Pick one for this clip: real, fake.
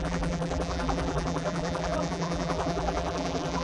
fake